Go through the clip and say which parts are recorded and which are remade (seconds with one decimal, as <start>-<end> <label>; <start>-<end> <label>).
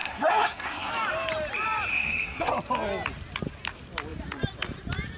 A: 0.0-0.9 remade; 0.9-1.9 recorded; 1.9-2.5 remade; 2.5-5.2 recorded